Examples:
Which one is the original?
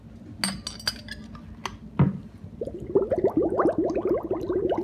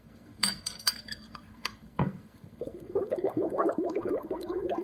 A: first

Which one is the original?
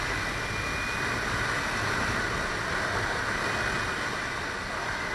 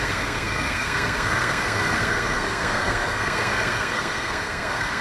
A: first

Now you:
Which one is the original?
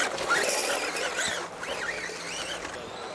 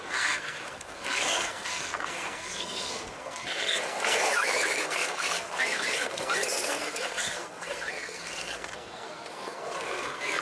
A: first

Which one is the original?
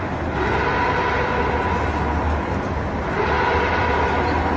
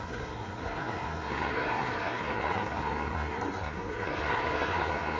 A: first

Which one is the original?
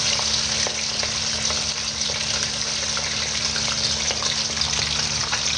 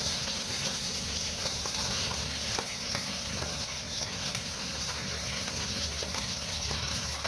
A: first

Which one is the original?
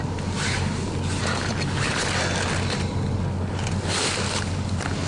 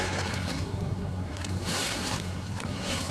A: first